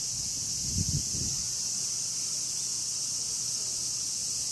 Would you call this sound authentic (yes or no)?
yes